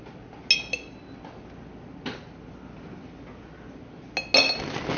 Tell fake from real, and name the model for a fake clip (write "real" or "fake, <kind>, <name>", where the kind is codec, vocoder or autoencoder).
real